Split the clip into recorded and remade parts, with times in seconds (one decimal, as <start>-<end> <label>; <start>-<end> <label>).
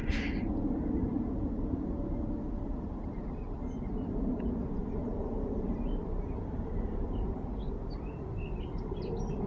0.0-4.8 recorded; 4.8-9.1 remade; 9.1-9.5 recorded